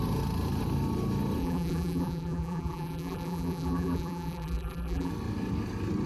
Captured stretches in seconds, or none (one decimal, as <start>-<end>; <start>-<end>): 0.0-1.4; 5.1-6.1